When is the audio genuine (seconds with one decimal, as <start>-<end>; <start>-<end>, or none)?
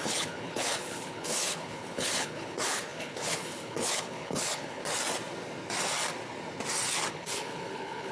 4.8-7.1